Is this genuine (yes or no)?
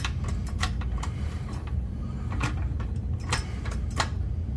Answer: no